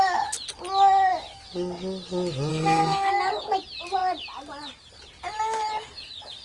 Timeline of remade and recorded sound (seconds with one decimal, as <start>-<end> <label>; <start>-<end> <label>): 0.0-2.5 recorded; 2.5-3.1 remade; 3.1-6.4 recorded